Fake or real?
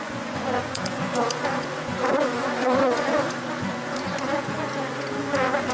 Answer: fake